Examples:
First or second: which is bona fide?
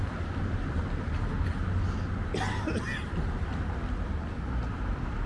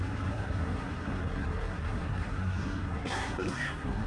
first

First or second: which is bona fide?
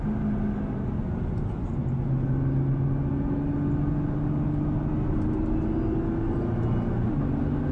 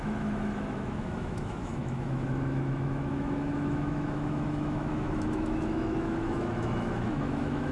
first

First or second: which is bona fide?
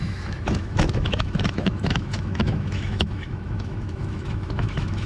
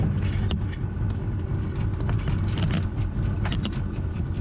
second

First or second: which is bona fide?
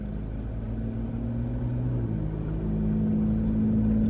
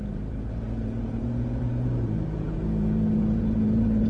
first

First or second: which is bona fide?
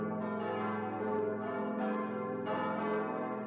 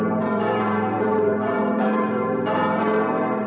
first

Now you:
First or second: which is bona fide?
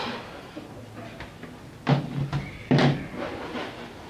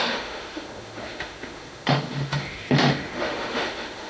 first